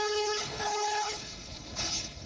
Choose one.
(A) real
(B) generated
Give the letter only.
B